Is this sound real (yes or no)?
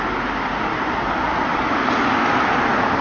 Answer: yes